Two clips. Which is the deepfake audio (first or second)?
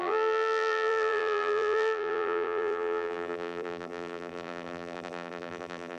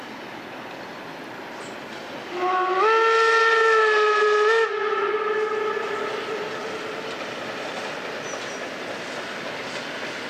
first